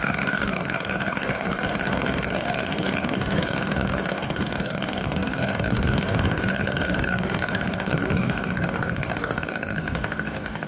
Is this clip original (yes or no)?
no